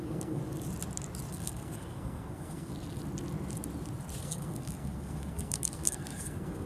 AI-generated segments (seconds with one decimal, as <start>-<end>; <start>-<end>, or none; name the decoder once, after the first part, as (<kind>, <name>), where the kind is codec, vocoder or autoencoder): 0.0-0.4 (codec, SNAC); 1.3-2.7; 4.2-6.7